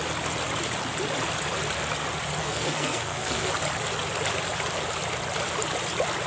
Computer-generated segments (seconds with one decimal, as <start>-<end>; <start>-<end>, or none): 2.4-3.5

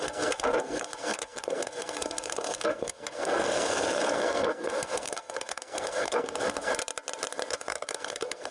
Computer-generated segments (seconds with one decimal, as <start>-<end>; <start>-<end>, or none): 0.0-6.7; 7.5-8.5

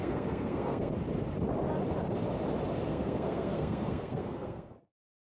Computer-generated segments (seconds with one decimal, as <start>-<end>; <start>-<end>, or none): 0.0-0.9; 2.9-5.3

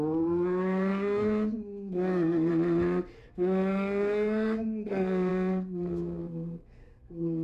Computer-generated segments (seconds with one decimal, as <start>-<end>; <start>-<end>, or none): 0.0-2.5; 3.3-7.4

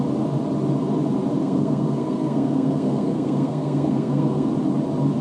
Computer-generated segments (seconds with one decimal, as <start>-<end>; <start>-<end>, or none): 1.4-4.5

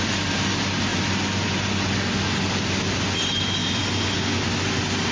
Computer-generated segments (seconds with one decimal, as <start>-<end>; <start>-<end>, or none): none